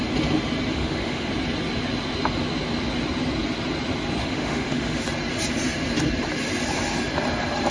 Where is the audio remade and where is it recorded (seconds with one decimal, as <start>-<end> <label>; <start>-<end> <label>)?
0.0-0.7 recorded; 0.7-1.3 remade; 1.3-4.2 recorded; 4.2-5.0 remade; 5.0-7.7 recorded